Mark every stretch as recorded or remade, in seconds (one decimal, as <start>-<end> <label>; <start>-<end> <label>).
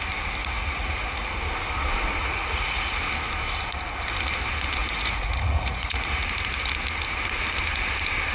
0.0-0.4 recorded; 0.4-1.3 remade; 1.3-2.2 recorded; 2.2-2.9 remade; 2.9-4.8 recorded; 4.8-6.2 remade; 6.2-8.3 recorded